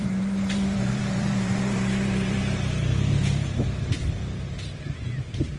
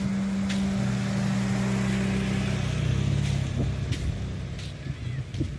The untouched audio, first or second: second